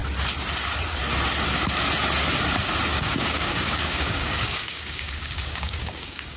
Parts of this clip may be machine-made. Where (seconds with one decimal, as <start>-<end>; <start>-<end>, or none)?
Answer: 2.9-6.4